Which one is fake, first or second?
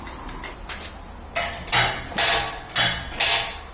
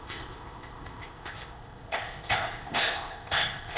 second